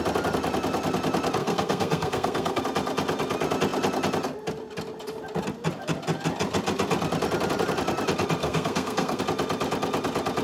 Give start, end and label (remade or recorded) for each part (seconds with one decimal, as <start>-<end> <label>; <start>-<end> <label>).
0.0-1.4 recorded; 1.4-2.6 remade; 2.6-8.4 recorded; 8.4-9.2 remade; 9.2-10.4 recorded